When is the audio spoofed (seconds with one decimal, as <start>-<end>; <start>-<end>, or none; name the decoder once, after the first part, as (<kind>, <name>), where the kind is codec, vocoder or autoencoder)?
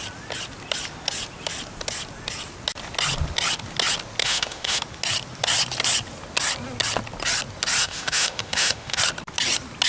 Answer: 4.2-4.8 (autoencoder, DAC-VAE); 7.8-9.0